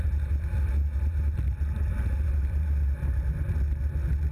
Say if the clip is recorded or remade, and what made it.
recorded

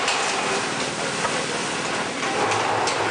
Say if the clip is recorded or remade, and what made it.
recorded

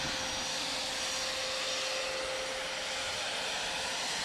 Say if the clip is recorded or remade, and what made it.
recorded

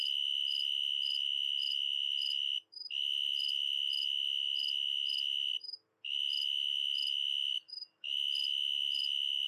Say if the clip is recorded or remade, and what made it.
recorded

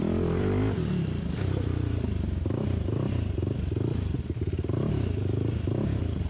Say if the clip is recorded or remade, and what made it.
remade, vocoder, BigVGAN v2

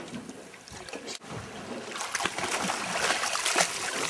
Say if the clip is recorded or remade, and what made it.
recorded